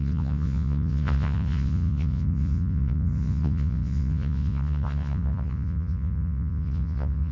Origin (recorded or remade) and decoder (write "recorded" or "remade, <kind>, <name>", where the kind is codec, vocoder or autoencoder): remade, vocoder, Vocos